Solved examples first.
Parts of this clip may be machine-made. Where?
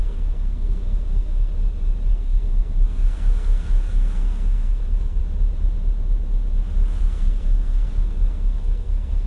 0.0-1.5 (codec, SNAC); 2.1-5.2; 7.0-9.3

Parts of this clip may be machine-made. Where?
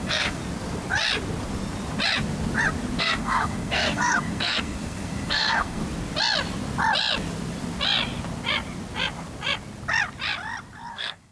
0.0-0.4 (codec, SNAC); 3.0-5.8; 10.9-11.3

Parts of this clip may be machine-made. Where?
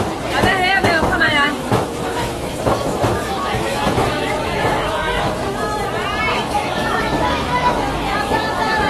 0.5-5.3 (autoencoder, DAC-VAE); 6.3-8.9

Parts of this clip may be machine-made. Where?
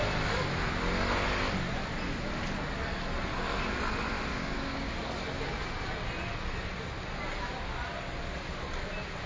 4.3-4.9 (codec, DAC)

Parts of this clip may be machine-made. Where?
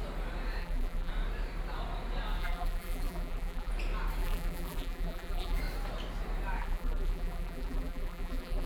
0.6-1.1 (vocoder, BigVGAN v2); 2.4-3.7; 4.2-5.6; 6.6-8.7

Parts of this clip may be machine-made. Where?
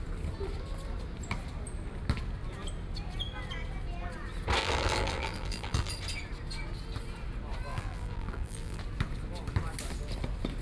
4.6-5.9 (vocoder, BigVGAN v2); 7.7-8.8